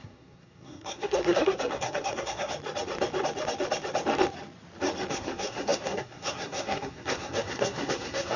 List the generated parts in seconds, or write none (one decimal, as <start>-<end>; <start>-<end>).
0.0-2.5; 5.1-8.4